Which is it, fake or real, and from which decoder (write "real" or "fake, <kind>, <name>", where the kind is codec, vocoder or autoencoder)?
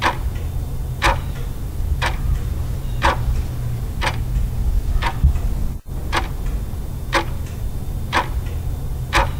real